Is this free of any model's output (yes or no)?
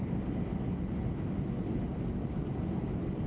yes